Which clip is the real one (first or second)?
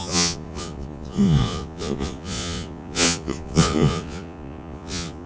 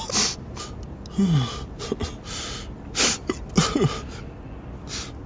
second